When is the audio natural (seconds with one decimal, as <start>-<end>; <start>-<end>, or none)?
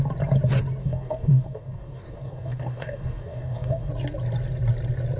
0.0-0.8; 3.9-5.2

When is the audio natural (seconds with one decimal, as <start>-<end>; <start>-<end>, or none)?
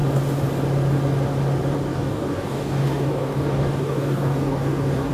0.0-1.9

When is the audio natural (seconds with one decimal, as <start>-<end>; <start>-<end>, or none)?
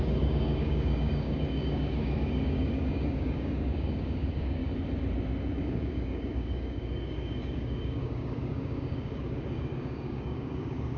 4.6-5.6